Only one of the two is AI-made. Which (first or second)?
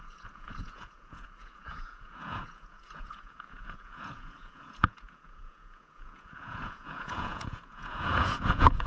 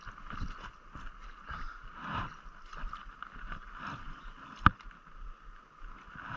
first